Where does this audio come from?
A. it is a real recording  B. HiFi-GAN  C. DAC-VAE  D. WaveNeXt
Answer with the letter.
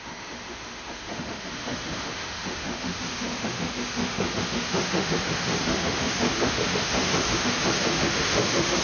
C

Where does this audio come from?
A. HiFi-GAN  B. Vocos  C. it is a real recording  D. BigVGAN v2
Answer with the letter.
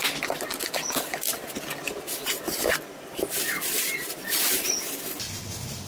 C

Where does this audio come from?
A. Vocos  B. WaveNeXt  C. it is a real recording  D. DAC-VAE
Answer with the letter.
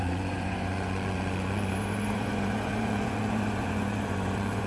A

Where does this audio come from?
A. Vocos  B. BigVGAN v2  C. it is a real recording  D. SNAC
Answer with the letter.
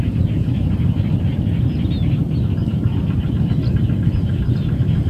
C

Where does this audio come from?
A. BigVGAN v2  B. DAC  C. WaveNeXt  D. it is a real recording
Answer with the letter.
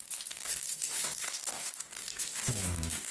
B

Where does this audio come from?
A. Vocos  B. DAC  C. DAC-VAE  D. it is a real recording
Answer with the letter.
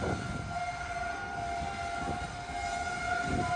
D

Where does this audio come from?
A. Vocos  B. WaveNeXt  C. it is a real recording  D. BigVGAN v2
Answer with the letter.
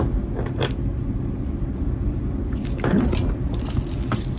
C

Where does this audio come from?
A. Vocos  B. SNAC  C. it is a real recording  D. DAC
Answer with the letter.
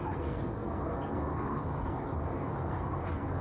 B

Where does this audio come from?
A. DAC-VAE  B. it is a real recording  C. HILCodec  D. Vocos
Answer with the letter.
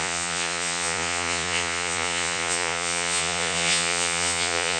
D